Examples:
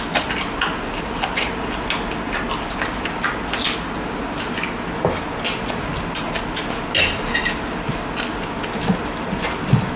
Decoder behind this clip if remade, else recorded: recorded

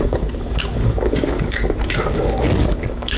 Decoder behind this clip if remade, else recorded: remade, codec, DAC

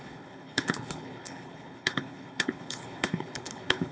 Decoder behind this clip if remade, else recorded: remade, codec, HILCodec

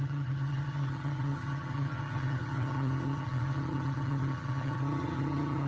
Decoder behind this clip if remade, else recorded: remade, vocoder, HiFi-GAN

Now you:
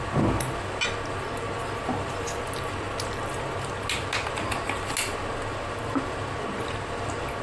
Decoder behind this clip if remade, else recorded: recorded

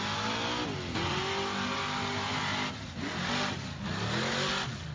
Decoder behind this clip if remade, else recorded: recorded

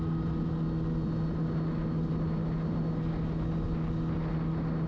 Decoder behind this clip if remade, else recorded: recorded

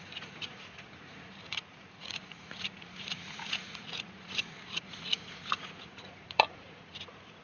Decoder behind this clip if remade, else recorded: remade, vocoder, Vocos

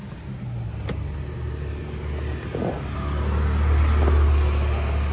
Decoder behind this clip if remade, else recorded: recorded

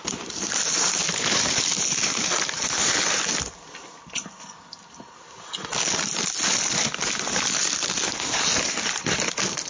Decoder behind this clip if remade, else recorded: remade, vocoder, BigVGAN v2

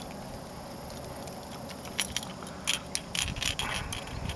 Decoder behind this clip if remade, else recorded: recorded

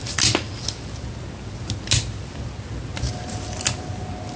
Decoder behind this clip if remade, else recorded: recorded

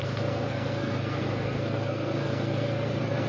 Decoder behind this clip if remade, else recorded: remade, codec, SNAC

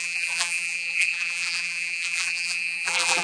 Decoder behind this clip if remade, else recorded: remade, vocoder, BigVGAN v2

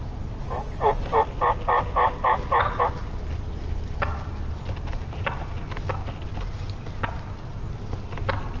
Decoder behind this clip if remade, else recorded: recorded